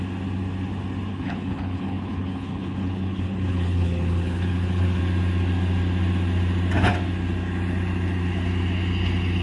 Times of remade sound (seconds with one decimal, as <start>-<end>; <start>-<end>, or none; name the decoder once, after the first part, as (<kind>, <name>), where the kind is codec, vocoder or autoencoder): 1.1-5.0 (codec, HILCodec)